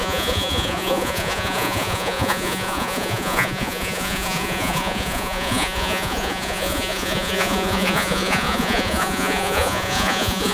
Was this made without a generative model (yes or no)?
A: no